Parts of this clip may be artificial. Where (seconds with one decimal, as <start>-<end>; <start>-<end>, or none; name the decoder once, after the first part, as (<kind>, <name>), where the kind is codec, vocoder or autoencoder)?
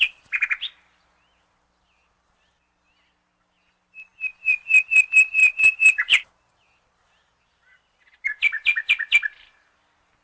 5.4-6.3 (vocoder, BigVGAN v2)